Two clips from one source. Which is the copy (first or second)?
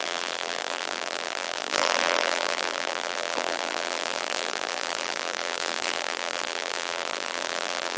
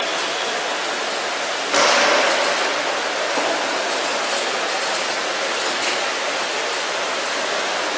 first